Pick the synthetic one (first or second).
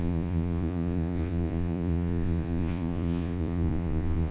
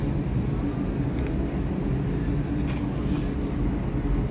first